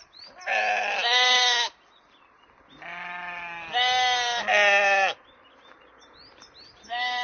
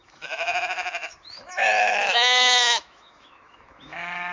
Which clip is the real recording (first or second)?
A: first